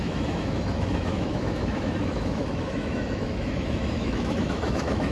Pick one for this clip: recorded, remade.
remade